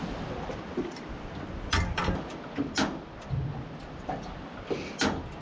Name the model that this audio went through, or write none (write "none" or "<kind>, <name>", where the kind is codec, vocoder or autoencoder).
none